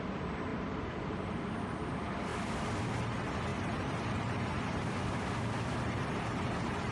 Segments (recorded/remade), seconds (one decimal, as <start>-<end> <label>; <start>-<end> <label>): 0.0-0.5 recorded; 0.5-1.9 remade; 1.9-2.3 recorded; 2.3-2.8 remade; 2.8-3.5 recorded; 3.5-4.3 remade; 4.3-6.9 recorded

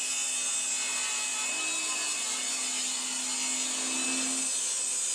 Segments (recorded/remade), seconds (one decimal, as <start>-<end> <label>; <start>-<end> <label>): 0.0-5.1 recorded

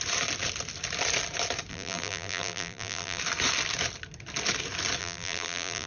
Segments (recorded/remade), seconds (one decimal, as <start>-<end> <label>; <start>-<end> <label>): 0.0-1.7 recorded; 1.7-3.2 remade; 3.2-5.0 recorded; 5.0-5.9 remade